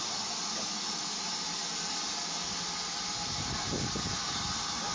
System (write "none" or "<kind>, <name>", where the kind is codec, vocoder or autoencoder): none